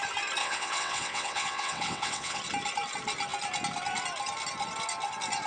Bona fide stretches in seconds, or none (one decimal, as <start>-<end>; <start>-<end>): 0.0-0.4; 2.4-5.5